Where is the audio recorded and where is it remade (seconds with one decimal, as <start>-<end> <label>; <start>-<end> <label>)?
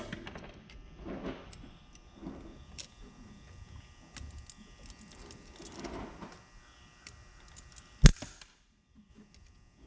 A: 0.0-9.9 recorded